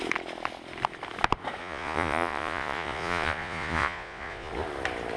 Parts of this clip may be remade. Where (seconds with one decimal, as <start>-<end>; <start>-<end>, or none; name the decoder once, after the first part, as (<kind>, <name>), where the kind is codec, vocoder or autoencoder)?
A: 1.6-4.5 (vocoder, Vocos)